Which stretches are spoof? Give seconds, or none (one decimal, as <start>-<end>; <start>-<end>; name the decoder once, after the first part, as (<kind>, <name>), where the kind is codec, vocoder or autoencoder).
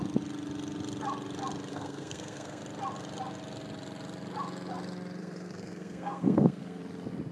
1.7-2.6 (codec, SNAC); 5.2-6.8